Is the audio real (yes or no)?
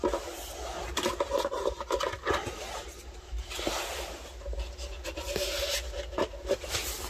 yes